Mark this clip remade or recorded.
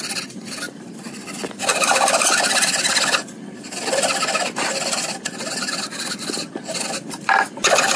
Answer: recorded